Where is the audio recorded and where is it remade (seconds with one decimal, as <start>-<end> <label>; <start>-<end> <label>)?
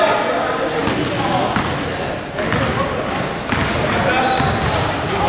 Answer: 0.0-5.3 recorded